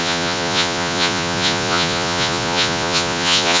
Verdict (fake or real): fake